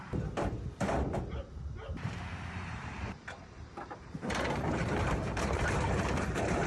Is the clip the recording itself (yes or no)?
no